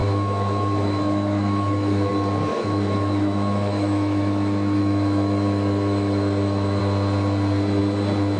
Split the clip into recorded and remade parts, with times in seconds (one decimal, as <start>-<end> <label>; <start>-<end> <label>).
0.0-2.1 remade; 2.1-2.5 recorded; 2.5-6.8 remade; 6.8-8.4 recorded